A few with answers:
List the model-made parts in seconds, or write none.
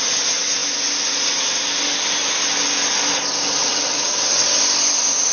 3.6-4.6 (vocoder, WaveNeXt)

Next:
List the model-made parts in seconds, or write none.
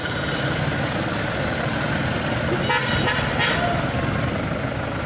none